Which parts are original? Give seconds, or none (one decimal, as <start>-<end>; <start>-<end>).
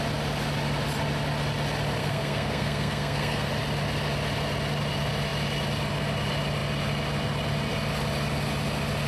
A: 0.0-2.0; 3.5-9.1